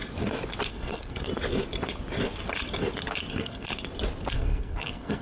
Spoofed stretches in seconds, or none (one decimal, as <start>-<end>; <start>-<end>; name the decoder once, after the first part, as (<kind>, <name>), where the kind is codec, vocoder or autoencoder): 0.7-1.3 (codec, SNAC); 3.3-3.7; 4.3-5.2